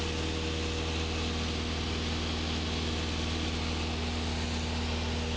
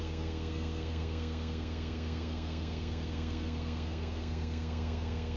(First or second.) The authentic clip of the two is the first